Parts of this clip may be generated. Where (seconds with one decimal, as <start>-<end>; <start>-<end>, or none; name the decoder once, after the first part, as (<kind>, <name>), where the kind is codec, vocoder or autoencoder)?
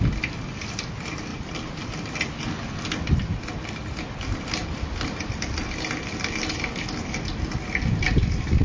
none